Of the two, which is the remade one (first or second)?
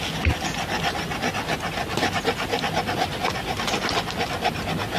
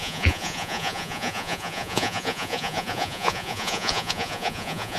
second